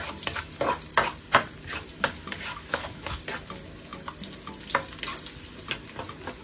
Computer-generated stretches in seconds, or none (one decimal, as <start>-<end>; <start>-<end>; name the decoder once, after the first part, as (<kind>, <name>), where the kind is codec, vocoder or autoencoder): 2.5-3.2 (autoencoder, DAC-VAE)

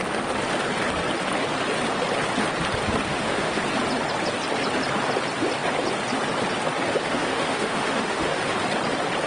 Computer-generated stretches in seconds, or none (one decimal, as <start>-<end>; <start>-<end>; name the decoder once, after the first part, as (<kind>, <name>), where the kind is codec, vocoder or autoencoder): 3.1-3.6 (autoencoder, DAC-VAE); 7.0-8.4

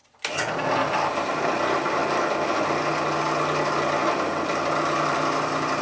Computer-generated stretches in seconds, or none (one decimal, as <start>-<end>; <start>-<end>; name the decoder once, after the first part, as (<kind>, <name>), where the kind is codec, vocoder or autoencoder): none